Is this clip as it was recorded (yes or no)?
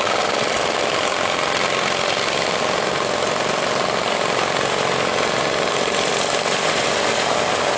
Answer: yes